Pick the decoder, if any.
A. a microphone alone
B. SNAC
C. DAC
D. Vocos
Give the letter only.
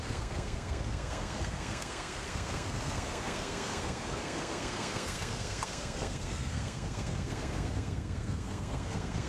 B